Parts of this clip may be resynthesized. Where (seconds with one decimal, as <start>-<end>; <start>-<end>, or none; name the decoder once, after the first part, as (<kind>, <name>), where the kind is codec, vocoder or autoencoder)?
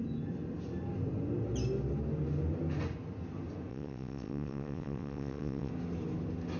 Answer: 3.7-5.7 (vocoder, WaveNeXt)